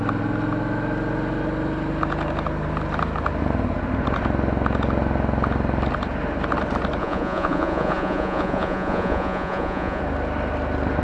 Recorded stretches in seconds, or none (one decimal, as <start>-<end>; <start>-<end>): 0.0-7.0; 10.0-11.0